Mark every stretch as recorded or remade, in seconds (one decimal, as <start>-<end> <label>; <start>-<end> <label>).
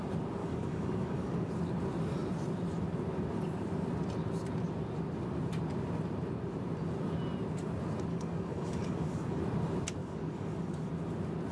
0.0-0.4 recorded; 0.4-1.5 remade; 1.5-8.1 recorded; 8.1-9.4 remade; 9.4-10.0 recorded; 10.0-10.9 remade; 10.9-11.5 recorded